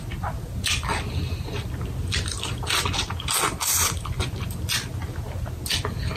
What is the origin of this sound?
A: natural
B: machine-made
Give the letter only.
A